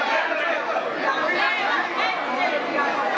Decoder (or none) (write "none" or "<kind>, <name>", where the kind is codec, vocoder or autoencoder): none